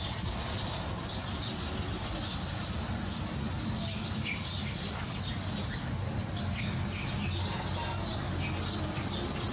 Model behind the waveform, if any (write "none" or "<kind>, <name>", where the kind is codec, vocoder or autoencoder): none